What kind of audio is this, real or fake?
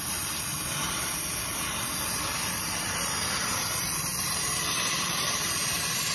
fake